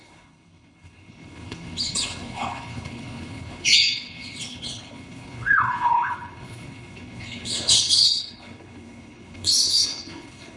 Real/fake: fake